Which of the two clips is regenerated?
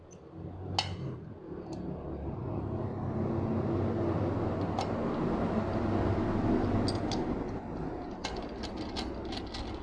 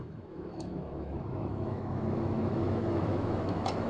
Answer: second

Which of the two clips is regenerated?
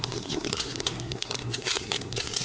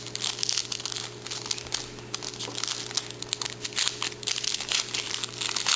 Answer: first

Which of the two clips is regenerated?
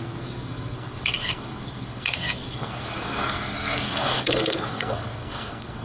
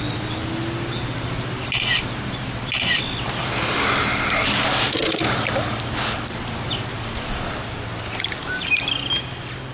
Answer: first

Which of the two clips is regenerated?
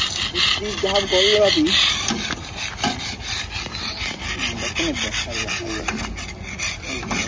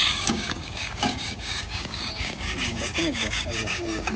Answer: second